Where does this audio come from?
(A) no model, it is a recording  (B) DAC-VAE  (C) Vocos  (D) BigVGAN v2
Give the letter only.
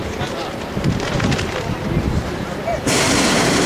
A